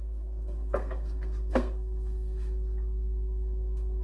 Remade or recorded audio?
remade